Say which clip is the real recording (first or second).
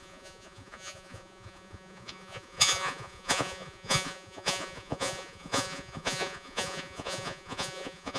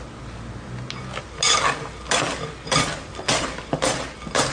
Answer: second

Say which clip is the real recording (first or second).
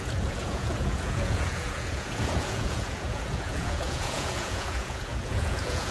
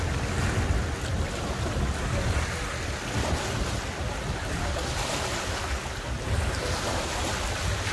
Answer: second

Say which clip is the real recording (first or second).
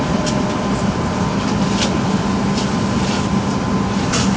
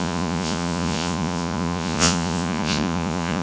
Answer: first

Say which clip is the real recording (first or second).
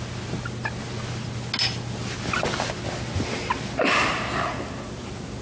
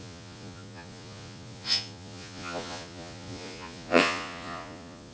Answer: first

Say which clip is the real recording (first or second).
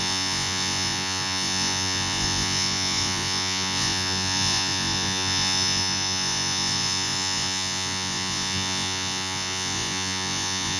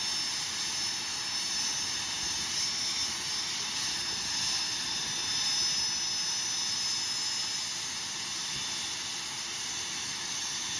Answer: second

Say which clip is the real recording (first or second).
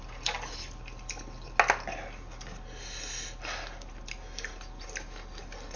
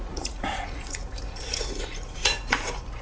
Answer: first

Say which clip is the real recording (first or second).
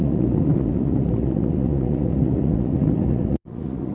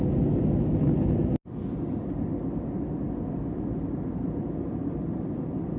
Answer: second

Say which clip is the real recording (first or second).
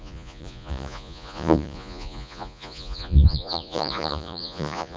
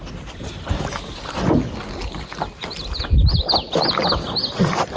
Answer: second